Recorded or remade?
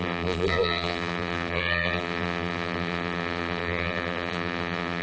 remade